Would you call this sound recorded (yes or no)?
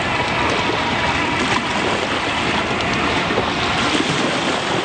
yes